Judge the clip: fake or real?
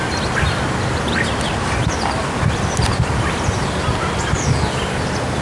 real